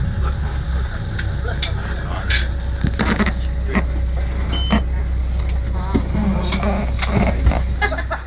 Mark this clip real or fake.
real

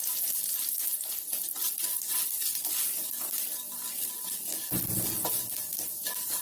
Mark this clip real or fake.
real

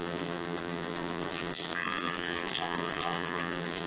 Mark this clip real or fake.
fake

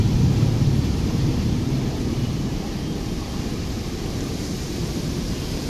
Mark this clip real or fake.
fake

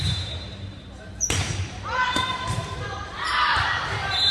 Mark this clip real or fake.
fake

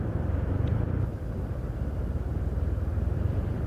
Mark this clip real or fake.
real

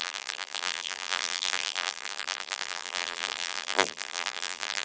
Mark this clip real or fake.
fake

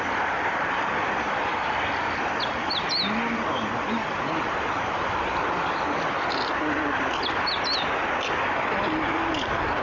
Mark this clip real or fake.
real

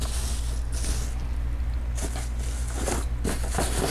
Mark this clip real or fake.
real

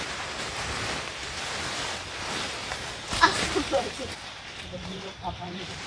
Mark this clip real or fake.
fake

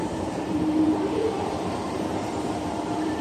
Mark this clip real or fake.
fake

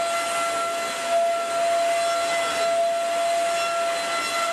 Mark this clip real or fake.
real